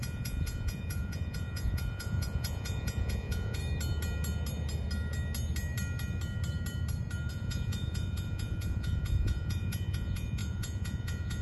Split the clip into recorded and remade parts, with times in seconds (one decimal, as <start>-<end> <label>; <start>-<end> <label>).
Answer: 0.0-3.6 remade; 3.6-7.3 recorded; 7.3-11.4 remade

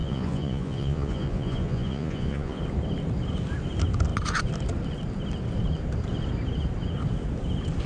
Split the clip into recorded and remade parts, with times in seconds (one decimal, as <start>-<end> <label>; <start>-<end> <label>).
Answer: 0.0-2.6 remade; 2.6-7.9 recorded

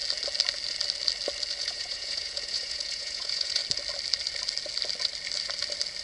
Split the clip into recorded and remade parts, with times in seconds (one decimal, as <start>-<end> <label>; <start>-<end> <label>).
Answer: 0.0-1.6 recorded; 1.6-3.6 remade; 3.6-6.0 recorded

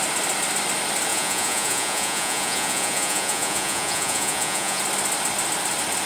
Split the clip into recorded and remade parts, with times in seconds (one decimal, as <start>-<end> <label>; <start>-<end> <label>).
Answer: 0.0-1.1 recorded; 1.1-4.8 remade; 4.8-6.1 recorded

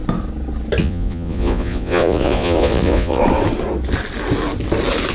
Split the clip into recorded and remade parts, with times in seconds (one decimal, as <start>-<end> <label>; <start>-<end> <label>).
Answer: 0.0-0.8 recorded; 0.8-3.2 remade; 3.2-5.1 recorded

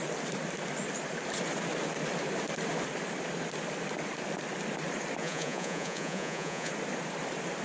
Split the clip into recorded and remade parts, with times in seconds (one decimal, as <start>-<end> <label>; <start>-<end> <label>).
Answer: 0.0-5.2 recorded; 5.2-6.7 remade; 6.7-7.6 recorded

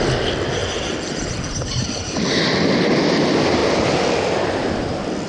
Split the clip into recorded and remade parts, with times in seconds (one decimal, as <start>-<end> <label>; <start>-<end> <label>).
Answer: 0.0-5.3 recorded

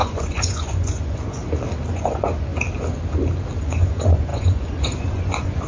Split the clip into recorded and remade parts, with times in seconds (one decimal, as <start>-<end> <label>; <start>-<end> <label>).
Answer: 0.0-1.4 remade; 1.4-1.9 recorded; 1.9-2.5 remade; 2.5-3.6 recorded; 3.6-5.7 remade